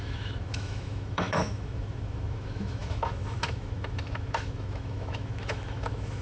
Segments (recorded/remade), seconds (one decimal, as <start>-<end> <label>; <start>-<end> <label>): 0.0-6.2 remade